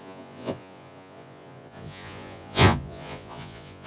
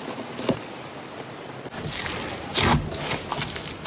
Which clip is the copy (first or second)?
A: first